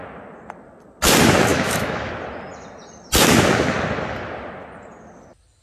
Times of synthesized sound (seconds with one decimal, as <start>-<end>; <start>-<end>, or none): 1.5-2.1